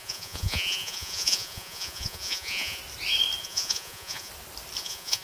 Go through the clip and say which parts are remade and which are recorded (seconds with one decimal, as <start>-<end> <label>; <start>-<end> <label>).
0.0-2.8 remade; 2.8-3.4 recorded; 3.4-4.3 remade; 4.3-4.8 recorded; 4.8-5.2 remade